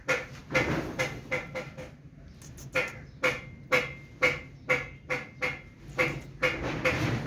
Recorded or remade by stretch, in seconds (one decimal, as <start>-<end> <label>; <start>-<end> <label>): 0.0-7.3 recorded